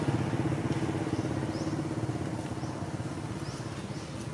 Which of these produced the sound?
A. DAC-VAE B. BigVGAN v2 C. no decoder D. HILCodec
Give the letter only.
C